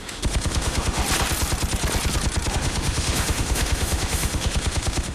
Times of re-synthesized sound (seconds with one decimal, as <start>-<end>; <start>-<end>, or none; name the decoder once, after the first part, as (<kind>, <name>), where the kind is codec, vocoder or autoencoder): 0.0-1.0 (autoencoder, DAC-VAE); 2.5-5.1

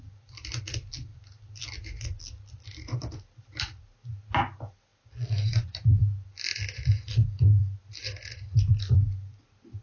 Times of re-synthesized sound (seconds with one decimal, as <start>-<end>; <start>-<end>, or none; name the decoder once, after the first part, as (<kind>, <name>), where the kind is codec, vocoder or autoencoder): none

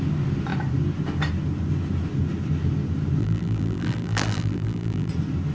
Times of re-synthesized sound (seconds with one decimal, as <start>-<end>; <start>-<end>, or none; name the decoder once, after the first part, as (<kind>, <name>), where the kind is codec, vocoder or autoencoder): 3.2-5.1 (vocoder, BigVGAN v2)

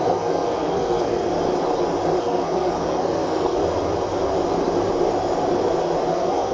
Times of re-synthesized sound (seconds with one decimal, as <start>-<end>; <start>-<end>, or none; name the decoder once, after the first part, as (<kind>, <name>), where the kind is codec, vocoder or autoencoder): 0.0-1.3 (codec, SNAC); 2.2-3.6; 6.1-6.5

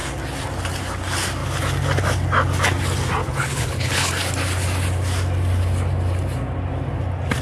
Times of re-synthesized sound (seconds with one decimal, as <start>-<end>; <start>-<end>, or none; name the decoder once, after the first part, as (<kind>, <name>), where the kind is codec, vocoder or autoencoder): 3.2-4.1 (codec, HILCodec)

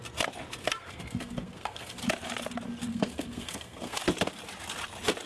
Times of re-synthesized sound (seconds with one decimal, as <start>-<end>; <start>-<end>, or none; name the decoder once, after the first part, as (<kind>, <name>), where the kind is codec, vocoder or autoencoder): 0.6-2.0 (codec, SNAC); 2.9-4.0

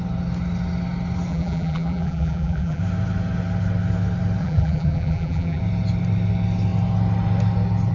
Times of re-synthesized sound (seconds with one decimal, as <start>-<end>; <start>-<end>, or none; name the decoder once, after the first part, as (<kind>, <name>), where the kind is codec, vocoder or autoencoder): 1.3-2.8 (vocoder, BigVGAN v2); 4.4-5.6

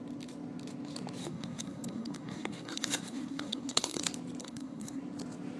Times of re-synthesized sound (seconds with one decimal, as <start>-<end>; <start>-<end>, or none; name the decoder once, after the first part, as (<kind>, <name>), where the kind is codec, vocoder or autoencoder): 1.2-4.0 (codec, SNAC); 4.4-5.0